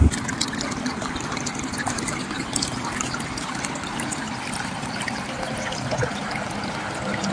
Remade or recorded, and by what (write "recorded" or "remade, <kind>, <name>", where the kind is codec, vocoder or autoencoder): recorded